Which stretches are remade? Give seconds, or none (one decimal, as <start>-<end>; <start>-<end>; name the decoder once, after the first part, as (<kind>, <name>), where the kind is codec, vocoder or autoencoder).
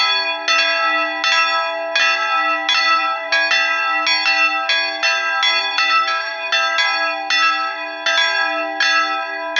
2.8-3.3 (vocoder, BigVGAN v2); 5.6-6.5